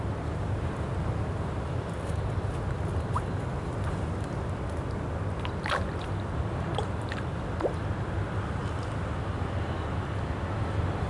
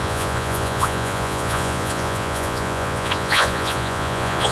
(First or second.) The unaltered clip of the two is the first